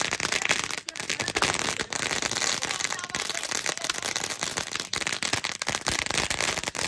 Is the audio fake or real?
real